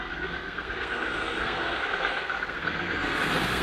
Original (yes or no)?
no